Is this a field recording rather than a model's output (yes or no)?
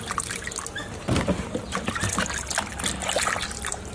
yes